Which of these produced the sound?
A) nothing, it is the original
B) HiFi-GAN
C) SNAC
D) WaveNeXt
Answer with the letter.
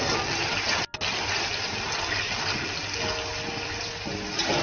A